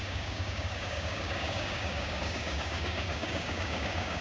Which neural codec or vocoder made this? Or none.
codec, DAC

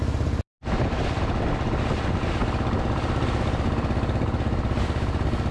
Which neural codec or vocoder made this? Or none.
none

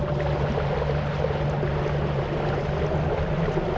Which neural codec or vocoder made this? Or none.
none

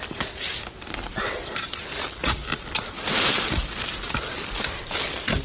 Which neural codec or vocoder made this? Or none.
none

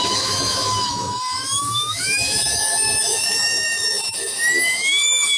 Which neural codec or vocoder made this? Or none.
autoencoder, DAC-VAE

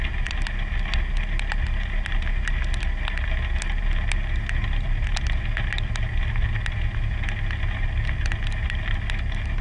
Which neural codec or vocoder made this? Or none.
none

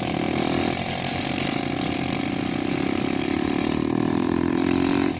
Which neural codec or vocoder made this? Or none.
none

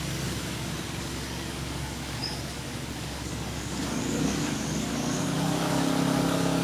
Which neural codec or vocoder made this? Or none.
codec, DAC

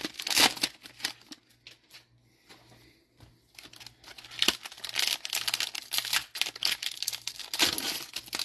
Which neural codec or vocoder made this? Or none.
none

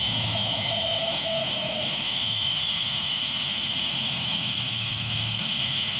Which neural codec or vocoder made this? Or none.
autoencoder, DAC-VAE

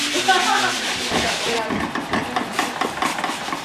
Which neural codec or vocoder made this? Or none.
none